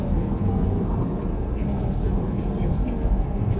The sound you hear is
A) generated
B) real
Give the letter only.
A